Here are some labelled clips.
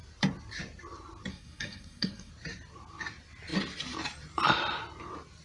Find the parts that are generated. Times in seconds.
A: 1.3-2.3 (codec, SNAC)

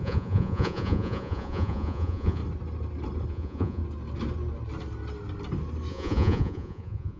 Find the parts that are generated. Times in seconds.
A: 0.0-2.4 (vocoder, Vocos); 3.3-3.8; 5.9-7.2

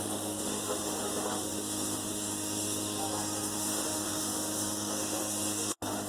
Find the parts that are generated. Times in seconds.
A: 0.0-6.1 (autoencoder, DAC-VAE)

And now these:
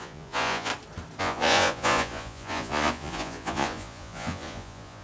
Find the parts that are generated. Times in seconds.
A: 0.0-0.7 (vocoder, Vocos); 1.2-5.0

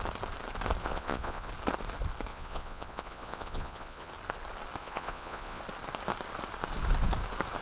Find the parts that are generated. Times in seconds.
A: 0.8-1.5 (vocoder, Vocos); 2.3-4.1; 4.8-5.6

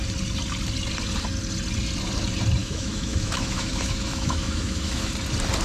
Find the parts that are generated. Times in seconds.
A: 2.6-5.1 (autoencoder, DAC-VAE)